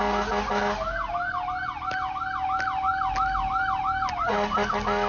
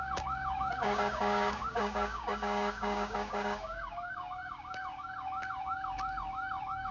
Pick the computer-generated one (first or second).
second